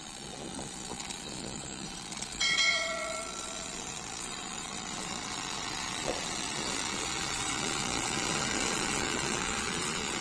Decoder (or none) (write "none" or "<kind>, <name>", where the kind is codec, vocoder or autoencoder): vocoder, Vocos